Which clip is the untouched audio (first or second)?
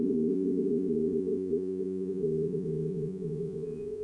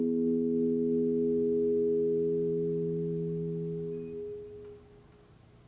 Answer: second